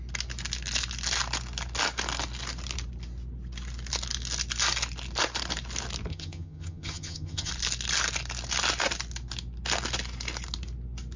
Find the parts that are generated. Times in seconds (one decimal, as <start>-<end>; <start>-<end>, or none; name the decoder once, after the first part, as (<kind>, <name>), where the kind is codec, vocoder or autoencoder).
6.1-7.5 (vocoder, HiFi-GAN)